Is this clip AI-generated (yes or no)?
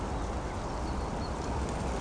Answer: no